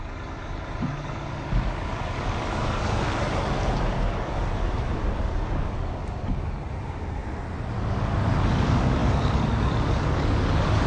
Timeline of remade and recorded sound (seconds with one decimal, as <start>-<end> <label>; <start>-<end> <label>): 0.0-7.2 remade; 7.2-7.8 recorded; 7.8-10.9 remade